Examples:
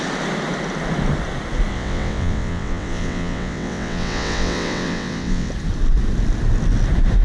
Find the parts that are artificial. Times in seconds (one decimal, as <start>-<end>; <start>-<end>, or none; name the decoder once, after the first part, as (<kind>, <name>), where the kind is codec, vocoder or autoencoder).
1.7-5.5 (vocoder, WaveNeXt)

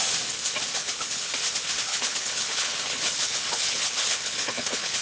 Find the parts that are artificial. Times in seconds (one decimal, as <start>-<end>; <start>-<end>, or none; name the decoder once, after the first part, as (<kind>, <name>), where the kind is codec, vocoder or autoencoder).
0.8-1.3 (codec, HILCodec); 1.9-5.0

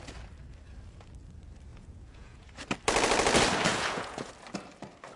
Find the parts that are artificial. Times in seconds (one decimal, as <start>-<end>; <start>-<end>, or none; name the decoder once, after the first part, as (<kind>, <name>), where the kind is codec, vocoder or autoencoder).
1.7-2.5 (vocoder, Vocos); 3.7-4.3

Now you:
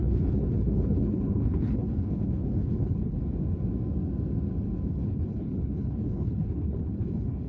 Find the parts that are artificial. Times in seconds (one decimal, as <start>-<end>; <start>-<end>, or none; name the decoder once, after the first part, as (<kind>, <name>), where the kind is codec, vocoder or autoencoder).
0.0-3.2 (codec, HILCodec); 4.9-7.5

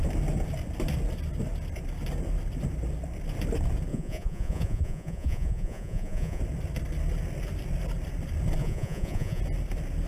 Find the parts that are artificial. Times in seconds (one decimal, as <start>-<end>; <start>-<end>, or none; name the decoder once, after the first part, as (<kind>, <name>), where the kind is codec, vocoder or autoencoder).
3.9-6.4 (vocoder, Vocos); 8.6-9.4